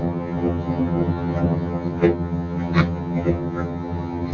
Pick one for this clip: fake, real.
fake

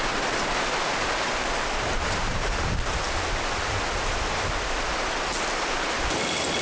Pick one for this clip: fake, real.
real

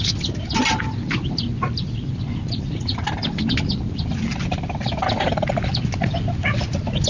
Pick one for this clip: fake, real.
real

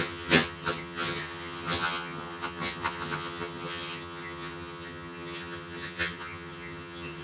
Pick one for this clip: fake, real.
fake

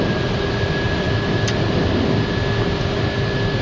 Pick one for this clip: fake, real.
real